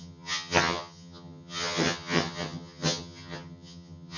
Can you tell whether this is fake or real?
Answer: fake